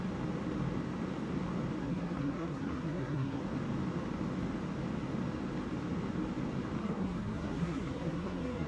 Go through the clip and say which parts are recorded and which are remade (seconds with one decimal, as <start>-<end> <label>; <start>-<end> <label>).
0.0-1.8 recorded; 1.8-3.4 remade; 3.4-6.8 recorded; 6.8-8.7 remade